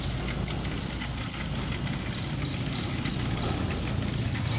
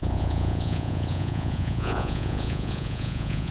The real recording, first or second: first